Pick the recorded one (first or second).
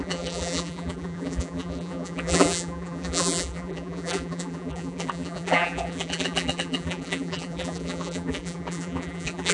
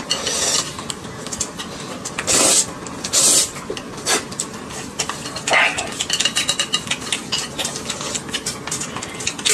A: second